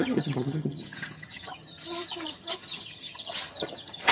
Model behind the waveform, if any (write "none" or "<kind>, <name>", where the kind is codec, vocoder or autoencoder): vocoder, HiFi-GAN